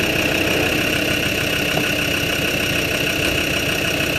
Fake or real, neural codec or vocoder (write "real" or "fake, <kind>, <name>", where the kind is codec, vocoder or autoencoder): real